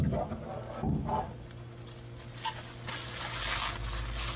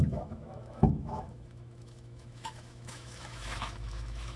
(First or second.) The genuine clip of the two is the first